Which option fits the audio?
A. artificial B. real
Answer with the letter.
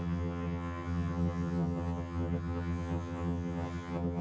A